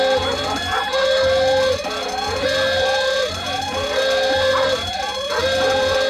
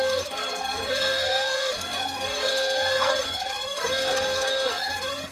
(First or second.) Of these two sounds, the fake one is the second